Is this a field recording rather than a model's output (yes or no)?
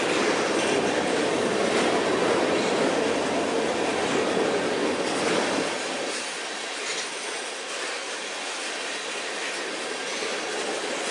yes